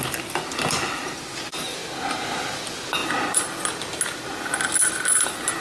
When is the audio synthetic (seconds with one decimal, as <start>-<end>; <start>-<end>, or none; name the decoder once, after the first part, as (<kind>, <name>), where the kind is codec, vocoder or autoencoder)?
none